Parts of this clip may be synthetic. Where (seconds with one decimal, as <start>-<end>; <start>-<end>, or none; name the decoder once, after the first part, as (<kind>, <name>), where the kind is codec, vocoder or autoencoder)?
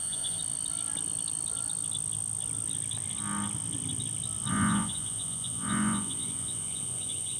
0.0-0.4 (vocoder, Vocos); 4.5-7.4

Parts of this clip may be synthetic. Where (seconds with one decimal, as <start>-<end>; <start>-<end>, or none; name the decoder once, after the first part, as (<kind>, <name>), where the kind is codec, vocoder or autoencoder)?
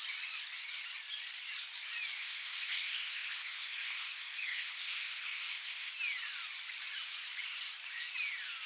2.2-5.9 (codec, ZipCodec)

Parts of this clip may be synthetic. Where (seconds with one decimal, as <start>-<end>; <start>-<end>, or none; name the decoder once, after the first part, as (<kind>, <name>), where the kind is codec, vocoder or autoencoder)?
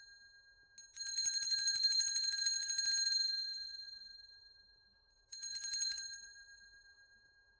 0.9-2.9 (vocoder, BigVGAN v2); 3.4-7.6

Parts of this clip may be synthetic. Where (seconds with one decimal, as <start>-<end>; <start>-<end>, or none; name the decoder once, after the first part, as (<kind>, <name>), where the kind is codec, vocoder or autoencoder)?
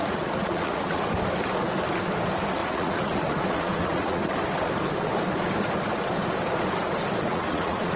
0.0-1.1 (vocoder, Vocos); 2.6-4.2; 7.3-8.0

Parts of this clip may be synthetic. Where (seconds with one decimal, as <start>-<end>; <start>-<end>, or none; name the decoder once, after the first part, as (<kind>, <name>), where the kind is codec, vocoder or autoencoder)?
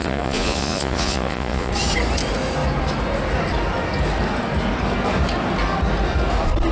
0.0-1.7 (vocoder, Vocos)